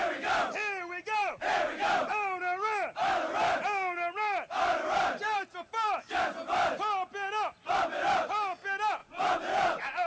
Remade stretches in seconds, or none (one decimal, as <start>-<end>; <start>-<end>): 1.2-2.1; 9.0-10.1